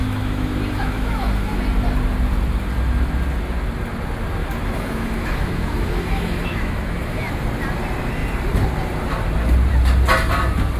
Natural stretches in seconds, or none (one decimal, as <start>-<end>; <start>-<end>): 1.6-4.4; 7.3-10.8